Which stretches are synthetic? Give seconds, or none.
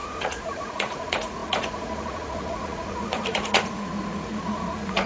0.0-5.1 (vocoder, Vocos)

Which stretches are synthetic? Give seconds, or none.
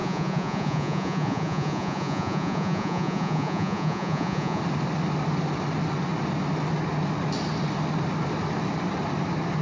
0.0-4.6 (vocoder, Vocos)